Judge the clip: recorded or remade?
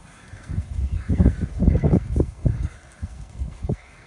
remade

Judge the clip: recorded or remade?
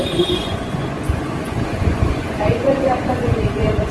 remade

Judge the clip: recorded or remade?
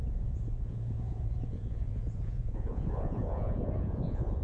remade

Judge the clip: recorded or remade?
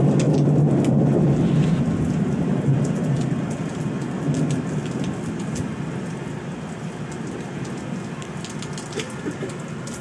recorded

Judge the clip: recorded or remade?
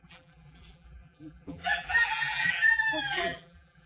remade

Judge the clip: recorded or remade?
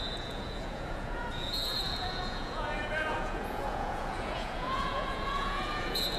remade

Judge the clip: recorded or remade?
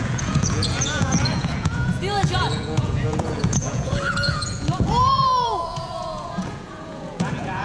remade